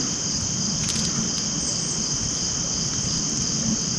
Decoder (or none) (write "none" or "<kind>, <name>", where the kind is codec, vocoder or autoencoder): none